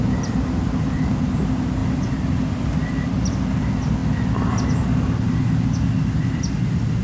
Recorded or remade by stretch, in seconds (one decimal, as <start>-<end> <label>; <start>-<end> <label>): 0.0-7.0 recorded

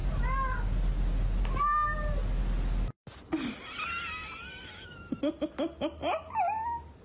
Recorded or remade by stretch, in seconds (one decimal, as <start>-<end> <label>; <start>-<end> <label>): 0.0-4.2 recorded; 4.2-5.2 remade; 5.2-7.0 recorded

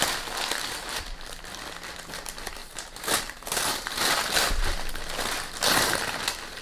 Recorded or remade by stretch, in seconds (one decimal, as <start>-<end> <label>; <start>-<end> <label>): 0.0-2.6 recorded; 2.6-4.9 remade; 4.9-6.6 recorded

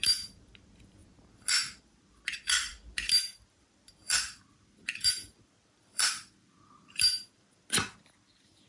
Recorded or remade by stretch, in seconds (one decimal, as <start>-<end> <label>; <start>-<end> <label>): 0.0-1.0 remade; 1.0-1.8 recorded; 1.8-8.7 remade